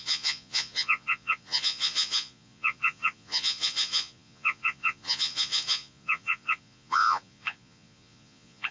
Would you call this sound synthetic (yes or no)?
yes